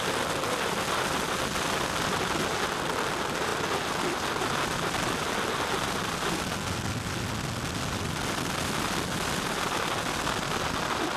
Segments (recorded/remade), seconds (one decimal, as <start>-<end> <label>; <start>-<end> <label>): 0.0-11.2 recorded